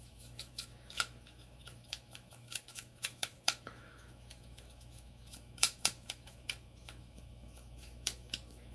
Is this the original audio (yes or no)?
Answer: no